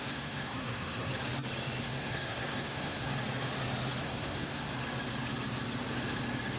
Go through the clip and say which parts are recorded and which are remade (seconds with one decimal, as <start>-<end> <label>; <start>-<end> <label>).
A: 0.0-1.1 remade; 1.1-1.8 recorded; 1.8-3.1 remade; 3.1-4.0 recorded; 4.0-4.7 remade; 4.7-6.6 recorded